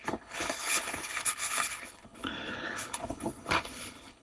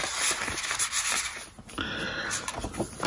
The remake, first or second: first